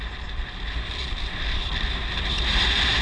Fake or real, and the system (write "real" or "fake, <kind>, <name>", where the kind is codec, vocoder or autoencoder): real